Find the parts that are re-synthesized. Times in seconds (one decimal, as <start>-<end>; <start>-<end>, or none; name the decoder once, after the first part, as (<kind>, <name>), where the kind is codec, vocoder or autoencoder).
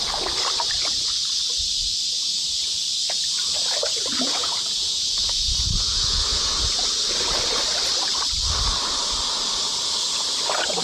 4.1-6.7 (vocoder, Vocos)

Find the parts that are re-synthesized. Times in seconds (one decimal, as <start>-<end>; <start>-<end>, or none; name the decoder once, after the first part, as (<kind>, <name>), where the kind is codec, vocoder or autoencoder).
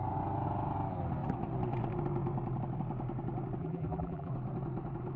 3.6-4.3 (vocoder, BigVGAN v2)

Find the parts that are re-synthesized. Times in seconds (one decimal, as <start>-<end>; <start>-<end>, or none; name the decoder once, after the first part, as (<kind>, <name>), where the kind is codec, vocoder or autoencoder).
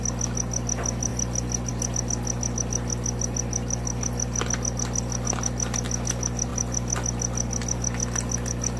none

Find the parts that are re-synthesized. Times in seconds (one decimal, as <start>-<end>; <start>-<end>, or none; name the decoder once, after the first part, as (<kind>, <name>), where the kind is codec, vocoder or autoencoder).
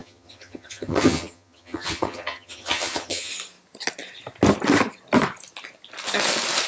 0.0-3.3 (vocoder, HiFi-GAN)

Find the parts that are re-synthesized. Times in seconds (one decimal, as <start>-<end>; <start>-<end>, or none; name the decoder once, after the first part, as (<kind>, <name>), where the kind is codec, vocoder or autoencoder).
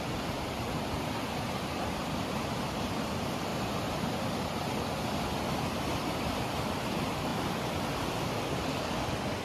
2.0-3.1 (vocoder, BigVGAN v2); 3.5-4.2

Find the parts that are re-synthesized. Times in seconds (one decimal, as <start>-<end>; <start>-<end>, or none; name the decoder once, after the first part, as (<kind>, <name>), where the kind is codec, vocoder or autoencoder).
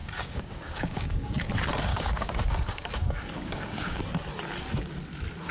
0.0-1.5 (codec, DAC); 1.9-4.0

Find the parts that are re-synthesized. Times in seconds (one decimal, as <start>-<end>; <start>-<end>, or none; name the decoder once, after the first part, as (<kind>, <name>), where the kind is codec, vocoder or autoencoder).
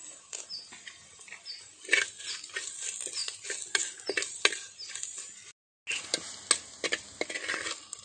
none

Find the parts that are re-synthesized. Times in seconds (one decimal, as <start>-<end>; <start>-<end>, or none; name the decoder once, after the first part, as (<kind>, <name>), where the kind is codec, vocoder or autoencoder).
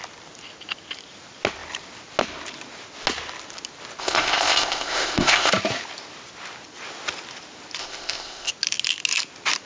4.0-5.5 (codec, ZipCodec); 7.8-8.5